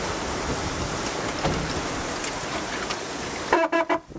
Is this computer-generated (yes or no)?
no